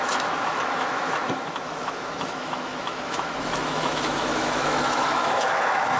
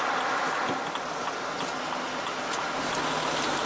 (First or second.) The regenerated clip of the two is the first